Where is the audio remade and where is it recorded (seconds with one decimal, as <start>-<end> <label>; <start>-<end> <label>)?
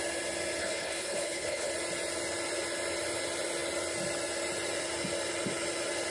0.0-0.6 recorded; 0.6-1.7 remade; 1.7-6.1 recorded